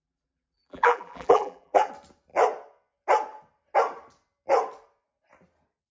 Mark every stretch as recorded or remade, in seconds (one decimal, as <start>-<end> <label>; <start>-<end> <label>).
0.0-1.9 remade; 1.9-5.9 recorded